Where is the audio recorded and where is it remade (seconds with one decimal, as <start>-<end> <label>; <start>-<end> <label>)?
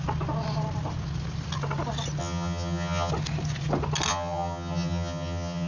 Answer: 0.0-2.2 recorded; 2.2-3.1 remade; 3.1-4.1 recorded; 4.1-5.7 remade